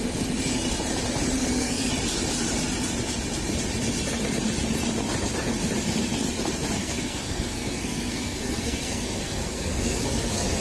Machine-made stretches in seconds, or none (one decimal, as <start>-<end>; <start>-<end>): 1.4-1.9; 6.8-10.6